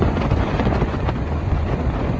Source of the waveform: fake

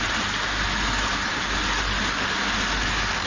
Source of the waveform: real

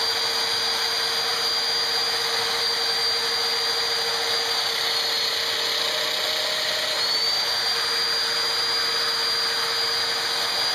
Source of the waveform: real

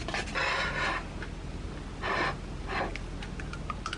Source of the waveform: real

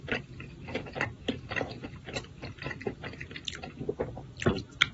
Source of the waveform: real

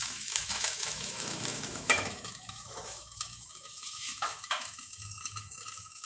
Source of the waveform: fake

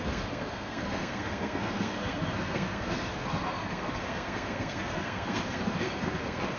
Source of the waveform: fake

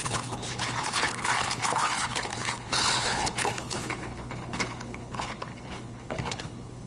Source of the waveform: fake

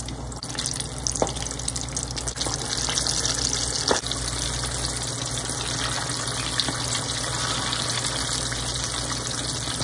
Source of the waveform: real